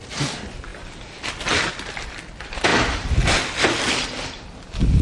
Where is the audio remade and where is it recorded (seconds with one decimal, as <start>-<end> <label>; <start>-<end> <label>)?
0.0-5.0 recorded